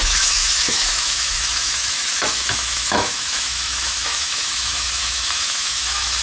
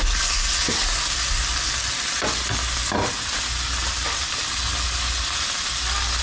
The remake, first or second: first